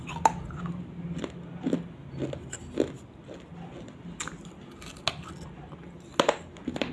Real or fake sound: real